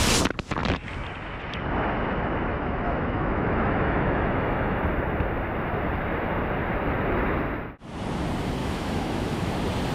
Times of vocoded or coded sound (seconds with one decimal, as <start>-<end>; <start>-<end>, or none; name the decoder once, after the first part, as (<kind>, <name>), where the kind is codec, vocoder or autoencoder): 2.5-4.8 (autoencoder, DAC-VAE); 8.6-9.5